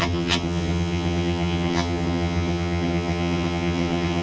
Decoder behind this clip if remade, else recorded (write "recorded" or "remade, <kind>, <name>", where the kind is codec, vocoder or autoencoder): remade, vocoder, HiFi-GAN